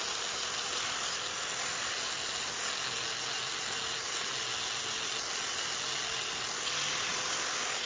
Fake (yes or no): no